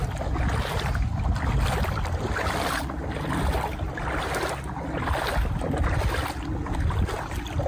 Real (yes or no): yes